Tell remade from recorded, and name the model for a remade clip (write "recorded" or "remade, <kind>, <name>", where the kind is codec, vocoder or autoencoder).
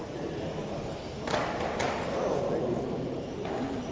recorded